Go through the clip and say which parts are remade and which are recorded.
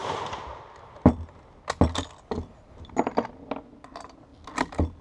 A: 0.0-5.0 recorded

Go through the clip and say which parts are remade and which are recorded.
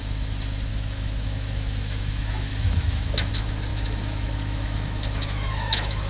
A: 0.0-0.7 recorded; 0.7-3.3 remade; 3.3-3.7 recorded; 3.7-6.1 remade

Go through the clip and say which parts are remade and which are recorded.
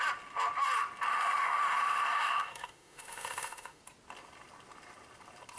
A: 0.0-1.1 recorded; 1.1-3.8 remade; 3.8-5.6 recorded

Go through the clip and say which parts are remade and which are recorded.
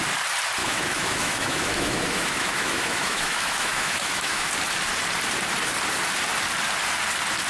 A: 0.0-0.6 recorded; 0.6-4.5 remade; 4.5-7.5 recorded